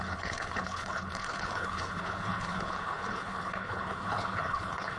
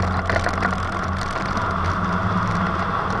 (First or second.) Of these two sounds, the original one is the second